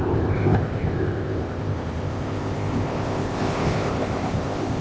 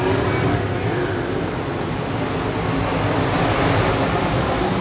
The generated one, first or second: first